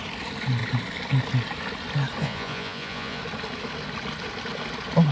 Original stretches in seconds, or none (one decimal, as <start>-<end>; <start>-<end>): 0.0-2.2; 3.2-5.1